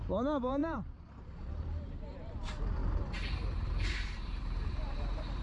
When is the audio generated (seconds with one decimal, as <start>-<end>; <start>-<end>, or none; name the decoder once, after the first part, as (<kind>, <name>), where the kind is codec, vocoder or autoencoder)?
0.0-5.4 (vocoder, BigVGAN v2)